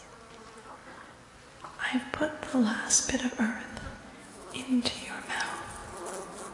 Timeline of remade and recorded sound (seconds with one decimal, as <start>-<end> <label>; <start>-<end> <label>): 0.0-2.5 recorded; 2.5-3.3 remade; 3.3-4.2 recorded; 4.2-5.2 remade; 5.2-6.5 recorded